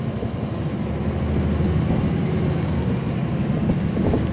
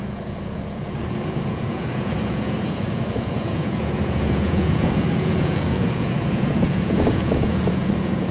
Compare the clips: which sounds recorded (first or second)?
first